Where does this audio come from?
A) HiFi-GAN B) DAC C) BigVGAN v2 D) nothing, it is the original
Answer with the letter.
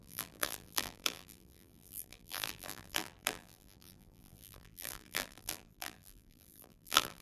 C